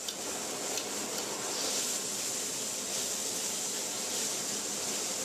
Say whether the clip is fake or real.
real